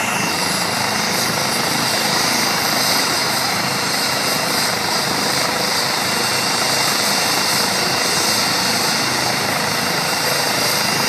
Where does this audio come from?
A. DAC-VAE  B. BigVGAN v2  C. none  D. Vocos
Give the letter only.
B